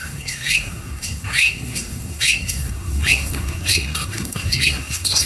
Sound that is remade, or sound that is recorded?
remade